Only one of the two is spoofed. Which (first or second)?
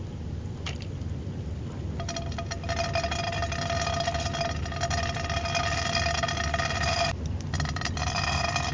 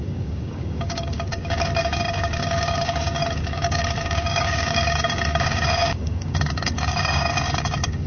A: second